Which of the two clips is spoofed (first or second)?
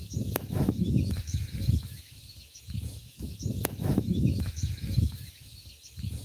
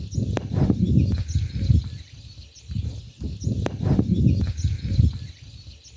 first